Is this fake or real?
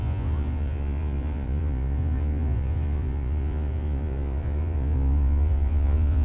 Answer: fake